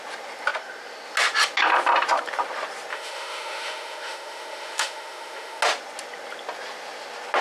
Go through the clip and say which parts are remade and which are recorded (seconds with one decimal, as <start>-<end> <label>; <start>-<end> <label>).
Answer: 0.0-2.9 recorded; 2.9-5.6 remade; 5.6-7.4 recorded